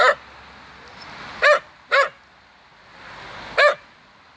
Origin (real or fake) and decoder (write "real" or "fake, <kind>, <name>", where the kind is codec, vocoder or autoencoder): real